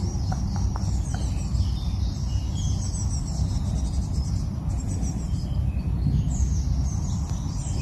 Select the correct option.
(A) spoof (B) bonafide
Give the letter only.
B